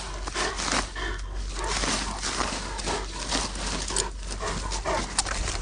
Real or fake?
real